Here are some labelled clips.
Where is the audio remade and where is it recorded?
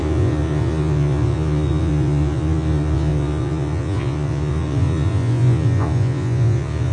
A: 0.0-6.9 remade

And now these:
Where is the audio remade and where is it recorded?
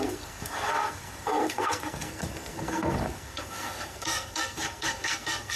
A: 0.0-5.6 remade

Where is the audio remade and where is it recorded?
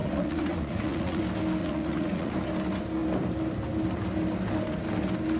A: 0.0-1.2 remade; 1.2-1.6 recorded; 1.6-2.3 remade; 2.3-5.4 recorded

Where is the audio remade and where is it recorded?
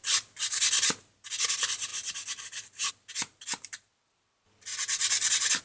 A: 0.0-5.6 recorded